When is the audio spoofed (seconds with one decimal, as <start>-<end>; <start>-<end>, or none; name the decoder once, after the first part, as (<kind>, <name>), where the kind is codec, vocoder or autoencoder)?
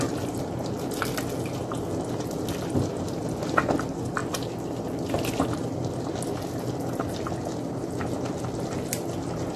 none